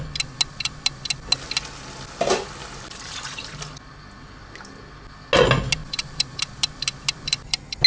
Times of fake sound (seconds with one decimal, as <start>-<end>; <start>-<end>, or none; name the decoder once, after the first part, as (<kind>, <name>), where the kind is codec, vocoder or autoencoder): 2.6-3.6 (vocoder, BigVGAN v2); 5.8-6.4